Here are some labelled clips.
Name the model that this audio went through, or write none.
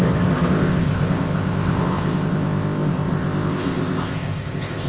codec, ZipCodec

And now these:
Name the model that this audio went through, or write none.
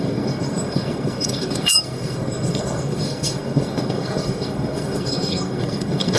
codec, SNAC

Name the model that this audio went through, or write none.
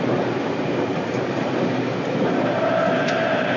vocoder, BigVGAN v2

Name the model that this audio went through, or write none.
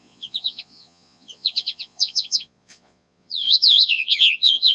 vocoder, Vocos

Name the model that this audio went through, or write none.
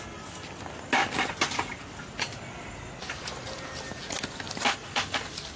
none